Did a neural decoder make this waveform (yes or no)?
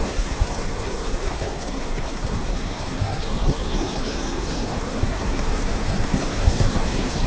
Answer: yes